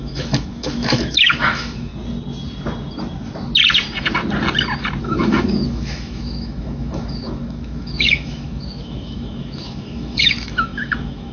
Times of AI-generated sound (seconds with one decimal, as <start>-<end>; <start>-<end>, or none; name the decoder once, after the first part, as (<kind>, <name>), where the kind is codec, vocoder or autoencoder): 0.0-1.9 (autoencoder, DAC-VAE); 5.0-11.3